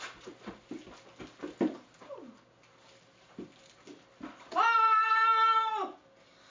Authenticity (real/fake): real